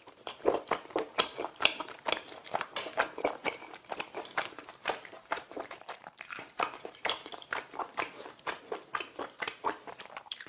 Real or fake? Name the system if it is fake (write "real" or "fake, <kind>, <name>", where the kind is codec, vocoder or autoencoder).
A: fake, vocoder, BigVGAN v2